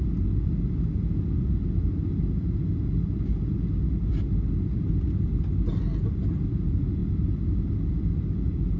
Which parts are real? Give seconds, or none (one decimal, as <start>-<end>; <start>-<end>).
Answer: 0.0-8.8